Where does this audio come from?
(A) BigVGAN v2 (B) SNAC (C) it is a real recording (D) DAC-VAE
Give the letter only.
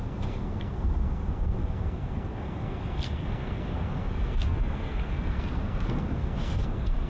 B